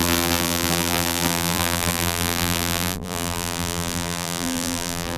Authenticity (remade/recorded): remade